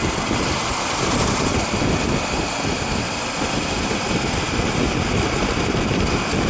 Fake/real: real